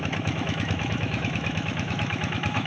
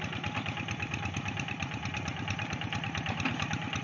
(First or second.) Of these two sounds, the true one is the second